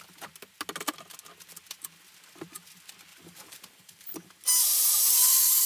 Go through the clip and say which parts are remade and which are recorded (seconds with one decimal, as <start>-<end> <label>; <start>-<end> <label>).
0.0-3.1 recorded; 3.1-4.3 remade; 4.3-4.7 recorded; 4.7-5.7 remade